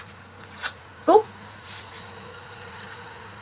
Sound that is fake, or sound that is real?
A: fake